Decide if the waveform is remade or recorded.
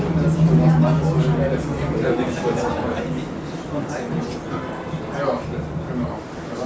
recorded